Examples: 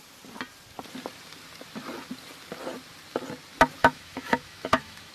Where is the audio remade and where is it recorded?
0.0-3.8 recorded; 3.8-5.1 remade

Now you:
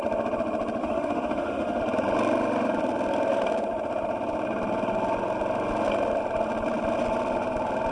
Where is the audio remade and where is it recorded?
0.0-0.8 recorded; 0.8-1.8 remade; 1.8-7.9 recorded

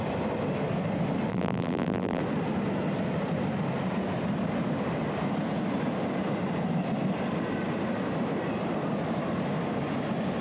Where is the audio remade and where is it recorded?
0.0-1.3 recorded; 1.3-2.2 remade; 2.2-10.4 recorded

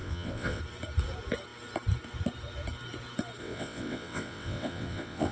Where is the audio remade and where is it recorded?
0.0-0.6 remade; 0.6-3.4 recorded; 3.4-5.3 remade

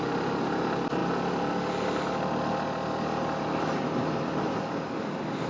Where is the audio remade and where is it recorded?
0.0-5.5 recorded

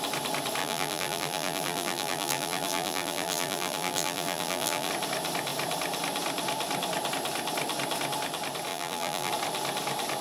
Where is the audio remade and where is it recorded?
0.0-0.6 recorded; 0.6-4.9 remade; 4.9-8.7 recorded; 8.7-9.3 remade; 9.3-10.2 recorded

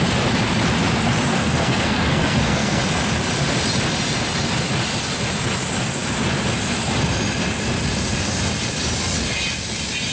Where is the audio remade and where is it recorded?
0.0-1.3 recorded; 1.3-2.8 remade; 2.8-10.1 recorded